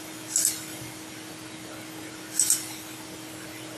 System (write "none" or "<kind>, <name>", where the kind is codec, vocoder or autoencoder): none